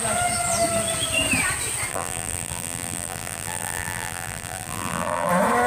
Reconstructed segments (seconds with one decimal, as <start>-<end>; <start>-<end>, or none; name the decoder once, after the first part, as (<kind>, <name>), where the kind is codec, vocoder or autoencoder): 1.9-5.3 (vocoder, BigVGAN v2)